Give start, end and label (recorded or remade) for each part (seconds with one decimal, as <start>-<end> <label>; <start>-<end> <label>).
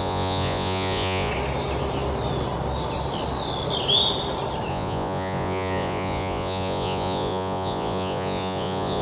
0.0-1.3 remade; 1.3-4.7 recorded; 4.7-9.0 remade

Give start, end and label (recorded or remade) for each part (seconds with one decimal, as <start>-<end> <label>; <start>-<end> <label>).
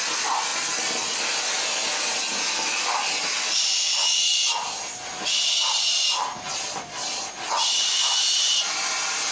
0.0-9.3 recorded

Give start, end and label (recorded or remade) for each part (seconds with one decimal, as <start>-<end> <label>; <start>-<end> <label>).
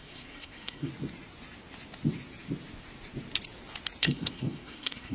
0.0-0.9 remade; 0.9-4.0 recorded; 4.0-5.1 remade